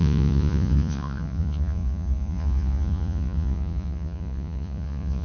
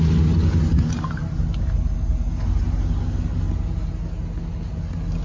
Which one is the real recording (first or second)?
second